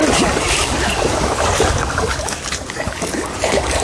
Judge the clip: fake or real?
fake